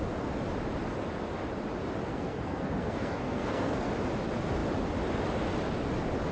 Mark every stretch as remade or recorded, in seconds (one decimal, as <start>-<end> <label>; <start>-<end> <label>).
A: 0.0-2.1 recorded; 2.1-3.9 remade; 3.9-6.3 recorded